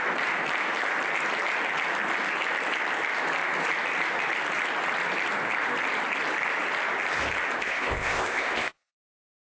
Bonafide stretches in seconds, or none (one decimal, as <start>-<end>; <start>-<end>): 0.0-7.6; 8.9-9.6